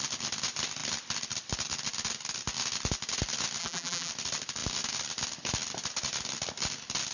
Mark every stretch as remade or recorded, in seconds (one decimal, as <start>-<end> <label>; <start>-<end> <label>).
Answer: 0.0-3.6 recorded; 3.6-4.1 remade; 4.1-7.1 recorded